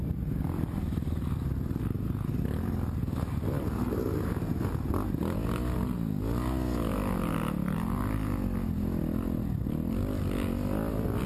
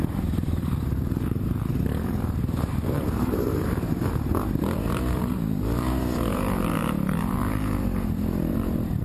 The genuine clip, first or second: first